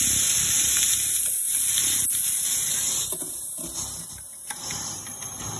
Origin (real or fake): fake